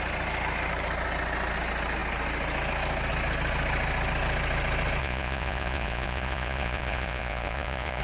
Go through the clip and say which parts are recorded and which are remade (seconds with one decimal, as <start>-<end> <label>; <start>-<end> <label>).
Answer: 0.0-5.0 recorded; 5.0-8.0 remade